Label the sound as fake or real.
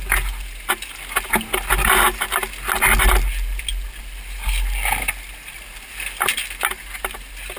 real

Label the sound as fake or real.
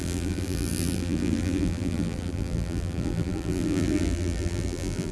fake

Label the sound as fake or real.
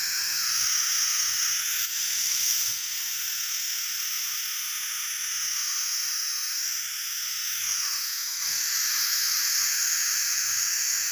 fake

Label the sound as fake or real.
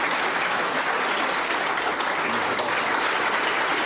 real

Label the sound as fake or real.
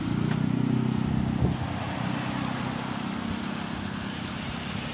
real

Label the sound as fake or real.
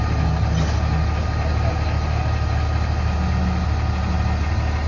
real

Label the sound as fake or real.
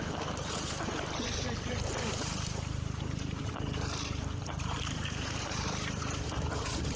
fake